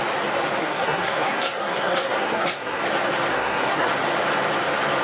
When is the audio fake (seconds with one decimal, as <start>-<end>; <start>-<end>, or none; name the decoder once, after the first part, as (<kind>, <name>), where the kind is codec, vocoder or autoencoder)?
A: 0.6-2.8 (codec, SNAC); 3.3-3.9